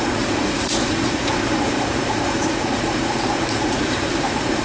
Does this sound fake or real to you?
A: fake